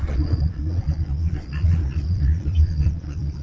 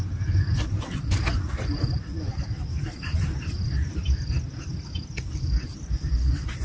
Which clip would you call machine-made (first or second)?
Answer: first